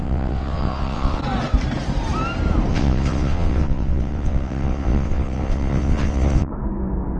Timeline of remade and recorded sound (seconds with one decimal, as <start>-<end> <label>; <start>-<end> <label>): 0.0-1.2 remade; 1.2-2.7 recorded; 2.7-6.5 remade; 6.5-7.2 recorded